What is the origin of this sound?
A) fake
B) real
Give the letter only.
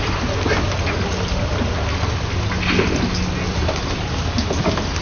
B